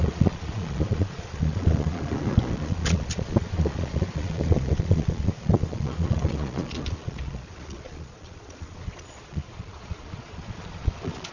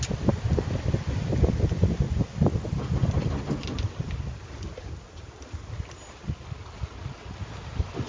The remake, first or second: first